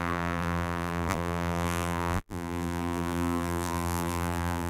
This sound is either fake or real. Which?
fake